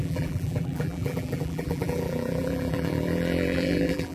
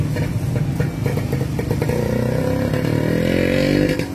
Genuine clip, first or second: second